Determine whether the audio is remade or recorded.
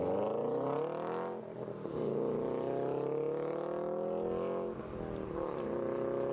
recorded